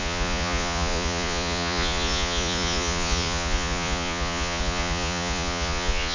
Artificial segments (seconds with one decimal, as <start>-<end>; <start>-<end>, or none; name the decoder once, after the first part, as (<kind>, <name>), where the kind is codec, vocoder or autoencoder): 0.0-6.1 (vocoder, Vocos)